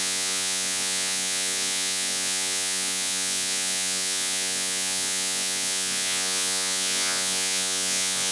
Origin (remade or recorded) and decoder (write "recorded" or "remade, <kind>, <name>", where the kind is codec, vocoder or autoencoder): remade, vocoder, Vocos